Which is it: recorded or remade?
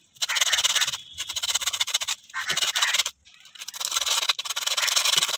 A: recorded